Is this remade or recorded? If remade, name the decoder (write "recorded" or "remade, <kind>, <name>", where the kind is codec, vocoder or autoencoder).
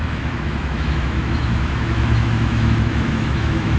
remade, autoencoder, DAC-VAE